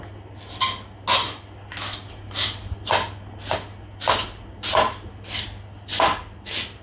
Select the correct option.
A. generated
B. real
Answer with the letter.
B